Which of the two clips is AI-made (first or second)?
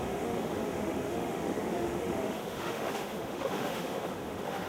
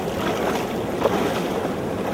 first